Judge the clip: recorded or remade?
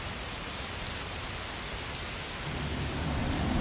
remade